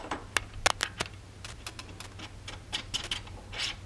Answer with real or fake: real